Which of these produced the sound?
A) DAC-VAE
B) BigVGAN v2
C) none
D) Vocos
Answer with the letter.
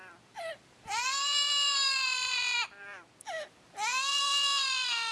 B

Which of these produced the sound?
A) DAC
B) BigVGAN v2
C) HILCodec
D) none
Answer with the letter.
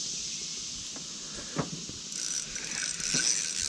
D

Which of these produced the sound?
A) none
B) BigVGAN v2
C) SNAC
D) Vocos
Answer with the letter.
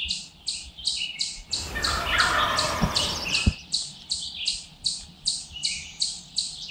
B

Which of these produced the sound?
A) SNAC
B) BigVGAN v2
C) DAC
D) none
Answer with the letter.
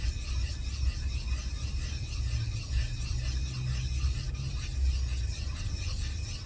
D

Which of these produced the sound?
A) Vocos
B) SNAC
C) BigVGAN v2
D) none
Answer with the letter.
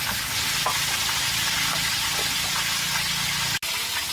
C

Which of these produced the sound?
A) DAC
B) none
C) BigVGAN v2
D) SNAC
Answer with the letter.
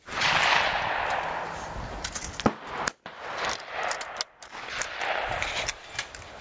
B